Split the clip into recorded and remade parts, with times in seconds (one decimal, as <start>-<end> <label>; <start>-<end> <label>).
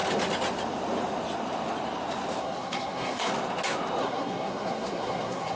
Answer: 0.0-2.4 recorded; 2.4-3.3 remade; 3.3-4.0 recorded; 4.0-5.6 remade